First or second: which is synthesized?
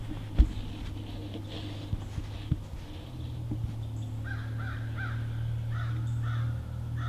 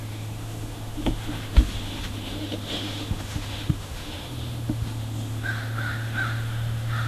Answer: second